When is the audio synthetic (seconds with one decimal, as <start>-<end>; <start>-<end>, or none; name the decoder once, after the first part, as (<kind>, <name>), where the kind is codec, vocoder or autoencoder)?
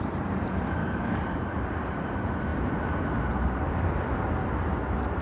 0.8-1.5 (codec, DAC)